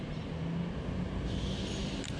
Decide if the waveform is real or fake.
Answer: real